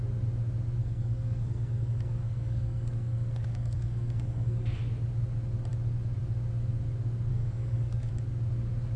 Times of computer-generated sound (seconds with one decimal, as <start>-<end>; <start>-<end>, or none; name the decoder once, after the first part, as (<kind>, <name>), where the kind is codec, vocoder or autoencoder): 0.8-4.8 (codec, SNAC); 7.3-8.1